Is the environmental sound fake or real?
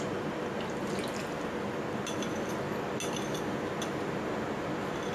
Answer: real